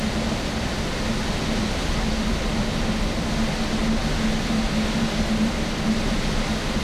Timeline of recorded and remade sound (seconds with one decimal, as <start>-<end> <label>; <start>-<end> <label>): 0.0-6.8 recorded